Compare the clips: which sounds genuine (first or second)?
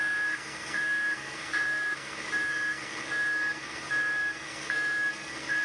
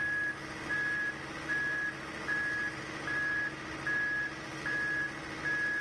second